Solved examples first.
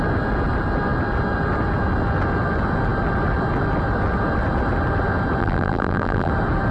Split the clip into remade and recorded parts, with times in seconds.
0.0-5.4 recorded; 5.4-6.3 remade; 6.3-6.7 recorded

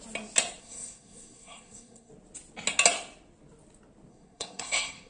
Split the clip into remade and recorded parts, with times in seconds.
0.0-0.6 recorded; 0.6-2.1 remade; 2.1-4.1 recorded; 4.1-5.1 remade